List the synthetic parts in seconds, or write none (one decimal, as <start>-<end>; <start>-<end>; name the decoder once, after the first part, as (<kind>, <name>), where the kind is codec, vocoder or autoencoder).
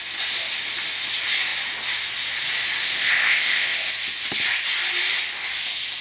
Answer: 2.8-3.9 (codec, ZipCodec)